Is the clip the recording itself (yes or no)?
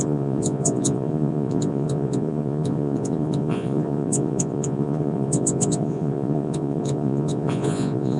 no